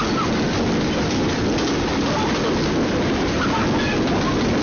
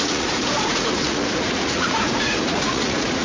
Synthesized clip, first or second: second